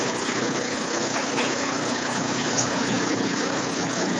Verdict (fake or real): fake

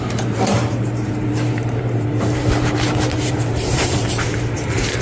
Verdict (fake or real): fake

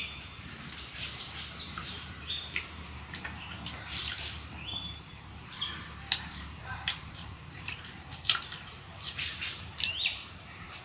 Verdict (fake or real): fake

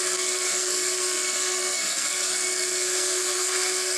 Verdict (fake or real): fake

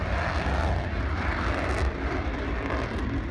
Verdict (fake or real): real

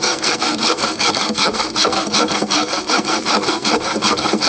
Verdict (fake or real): fake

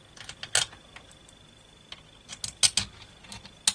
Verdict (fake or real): real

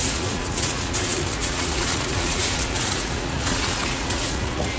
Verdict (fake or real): fake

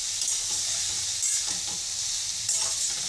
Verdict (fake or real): real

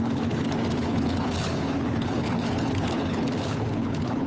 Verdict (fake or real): fake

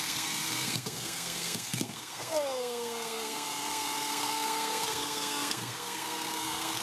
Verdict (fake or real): fake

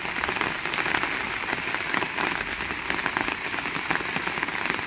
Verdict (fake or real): real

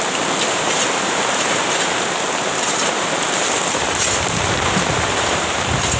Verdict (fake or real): fake